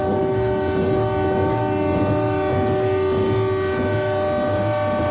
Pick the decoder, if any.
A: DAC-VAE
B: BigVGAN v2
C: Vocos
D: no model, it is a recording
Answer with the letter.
D